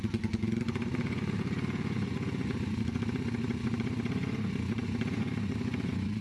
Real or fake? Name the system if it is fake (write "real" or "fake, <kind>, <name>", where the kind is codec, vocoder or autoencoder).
fake, vocoder, Vocos